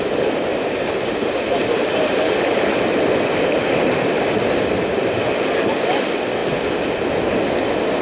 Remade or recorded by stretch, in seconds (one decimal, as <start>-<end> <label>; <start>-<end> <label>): 0.0-0.5 recorded; 0.5-2.3 remade; 2.3-8.0 recorded